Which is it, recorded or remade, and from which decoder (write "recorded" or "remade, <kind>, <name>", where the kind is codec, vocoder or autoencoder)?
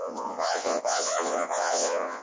remade, vocoder, Vocos